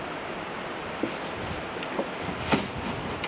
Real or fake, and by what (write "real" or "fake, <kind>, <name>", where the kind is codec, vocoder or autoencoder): real